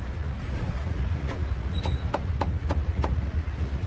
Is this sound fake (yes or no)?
yes